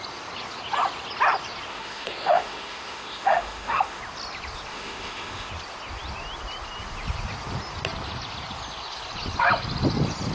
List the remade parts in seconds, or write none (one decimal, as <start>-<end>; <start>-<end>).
1.7-4.0; 4.7-5.5